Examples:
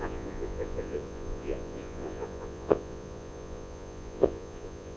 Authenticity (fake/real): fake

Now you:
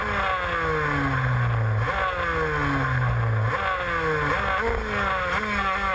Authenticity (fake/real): real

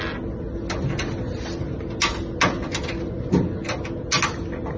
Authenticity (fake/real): real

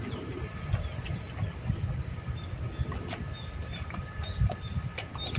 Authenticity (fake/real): real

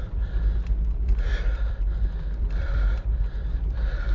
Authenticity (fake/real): real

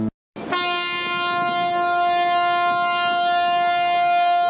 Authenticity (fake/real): real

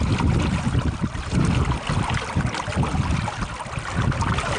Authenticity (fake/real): real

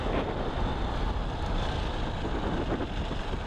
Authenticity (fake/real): real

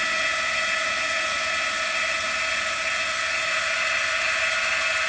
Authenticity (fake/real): real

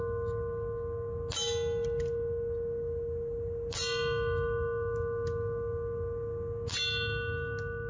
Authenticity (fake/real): real